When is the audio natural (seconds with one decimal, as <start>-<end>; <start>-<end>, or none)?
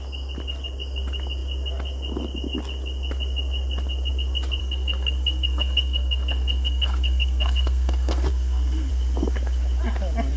0.0-4.6; 8.9-10.4